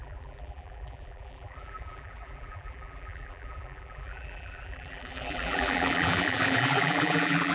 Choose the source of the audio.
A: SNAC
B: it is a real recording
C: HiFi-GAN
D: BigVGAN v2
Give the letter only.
D